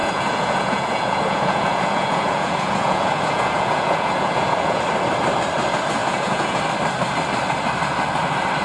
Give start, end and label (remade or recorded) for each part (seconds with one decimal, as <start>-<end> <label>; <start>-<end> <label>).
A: 0.0-4.8 remade; 4.8-6.0 recorded; 6.0-6.6 remade; 6.6-8.6 recorded